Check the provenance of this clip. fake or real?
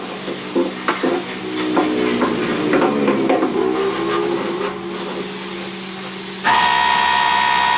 real